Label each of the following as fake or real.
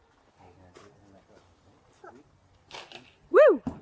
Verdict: real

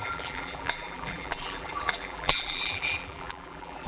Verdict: fake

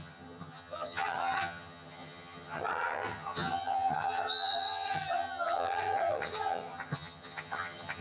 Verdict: fake